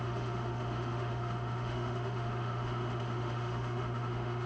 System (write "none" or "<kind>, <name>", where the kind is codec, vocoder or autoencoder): autoencoder, DAC-VAE